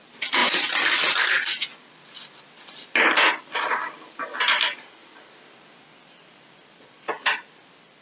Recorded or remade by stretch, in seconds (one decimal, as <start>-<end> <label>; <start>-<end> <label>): 0.0-0.4 remade; 0.4-3.3 recorded; 3.3-8.0 remade